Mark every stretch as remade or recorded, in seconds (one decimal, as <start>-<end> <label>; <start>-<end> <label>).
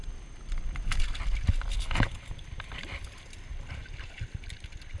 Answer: 0.0-3.5 recorded; 3.5-4.5 remade; 4.5-5.0 recorded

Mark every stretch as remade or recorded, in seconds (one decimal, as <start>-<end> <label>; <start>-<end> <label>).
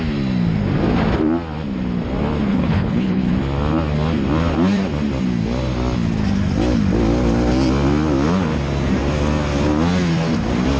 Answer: 0.0-2.5 recorded; 2.5-3.3 remade; 3.3-10.8 recorded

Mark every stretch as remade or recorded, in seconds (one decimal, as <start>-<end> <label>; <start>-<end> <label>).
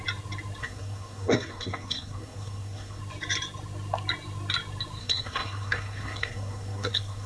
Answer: 0.0-0.6 recorded; 0.6-3.0 remade; 3.0-5.0 recorded; 5.0-7.3 remade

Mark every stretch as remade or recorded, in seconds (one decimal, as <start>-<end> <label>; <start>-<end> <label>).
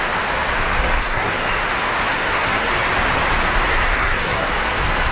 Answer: 0.0-1.0 recorded; 1.0-1.5 remade; 1.5-2.1 recorded; 2.1-2.7 remade; 2.7-3.7 recorded; 3.7-4.5 remade; 4.5-5.1 recorded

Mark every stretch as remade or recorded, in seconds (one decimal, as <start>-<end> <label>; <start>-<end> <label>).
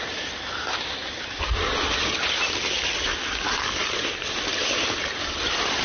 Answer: 0.0-5.8 recorded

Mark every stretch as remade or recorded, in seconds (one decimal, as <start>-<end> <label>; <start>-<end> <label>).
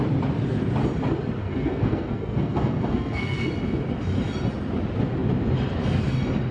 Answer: 0.0-1.4 recorded; 1.4-3.5 remade; 3.5-6.5 recorded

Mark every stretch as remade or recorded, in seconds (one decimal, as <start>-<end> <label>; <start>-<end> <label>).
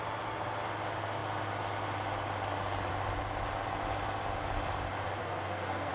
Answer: 0.0-5.2 recorded; 5.2-5.9 remade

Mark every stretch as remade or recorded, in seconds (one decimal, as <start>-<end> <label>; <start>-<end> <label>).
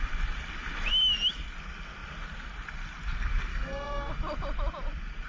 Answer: 0.0-3.5 recorded; 3.5-4.1 remade; 4.1-5.3 recorded